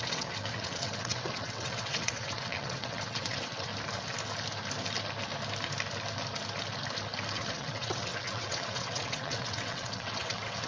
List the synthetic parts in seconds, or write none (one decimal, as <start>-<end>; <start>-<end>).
0.0-3.7; 7.3-10.7